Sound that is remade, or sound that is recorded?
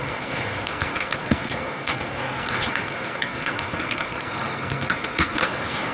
remade